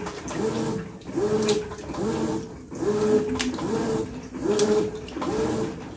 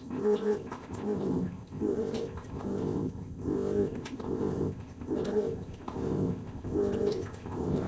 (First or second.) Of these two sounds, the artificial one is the second